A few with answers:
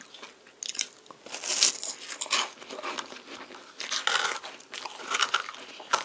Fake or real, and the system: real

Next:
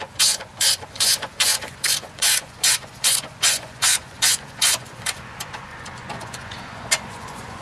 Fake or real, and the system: fake, vocoder, Vocos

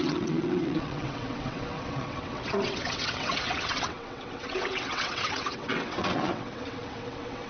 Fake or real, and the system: fake, vocoder, WaveNeXt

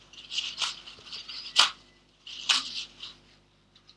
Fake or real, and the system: real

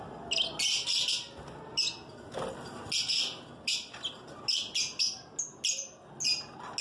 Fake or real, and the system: real